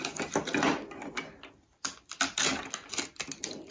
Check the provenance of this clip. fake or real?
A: real